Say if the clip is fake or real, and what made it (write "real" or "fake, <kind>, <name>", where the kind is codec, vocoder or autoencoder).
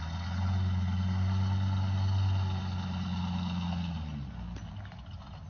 real